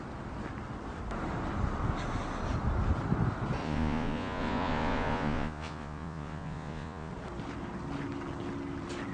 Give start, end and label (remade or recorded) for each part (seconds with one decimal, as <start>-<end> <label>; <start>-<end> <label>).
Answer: 0.0-3.6 recorded; 3.6-7.1 remade; 7.1-9.1 recorded